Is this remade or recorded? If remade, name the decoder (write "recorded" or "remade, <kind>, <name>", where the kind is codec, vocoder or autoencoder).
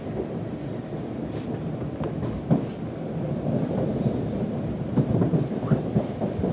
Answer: remade, vocoder, BigVGAN v2